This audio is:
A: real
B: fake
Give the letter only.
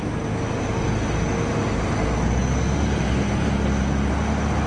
A